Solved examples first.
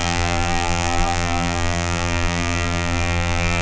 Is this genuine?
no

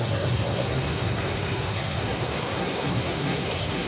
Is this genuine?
no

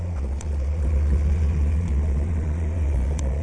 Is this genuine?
no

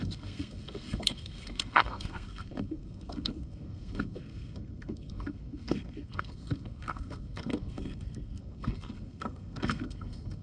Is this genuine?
no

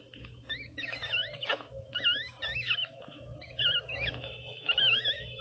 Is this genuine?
no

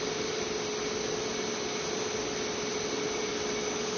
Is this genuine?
yes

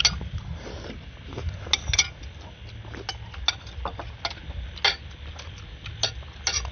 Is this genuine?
yes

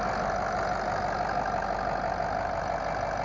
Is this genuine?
yes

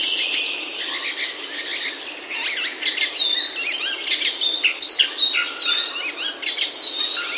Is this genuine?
yes